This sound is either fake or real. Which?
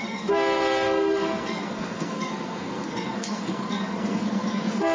fake